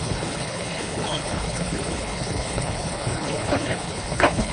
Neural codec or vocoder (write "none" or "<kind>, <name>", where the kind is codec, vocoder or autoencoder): codec, HILCodec